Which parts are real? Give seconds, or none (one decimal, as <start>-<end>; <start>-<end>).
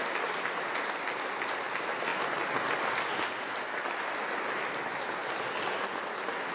0.0-6.5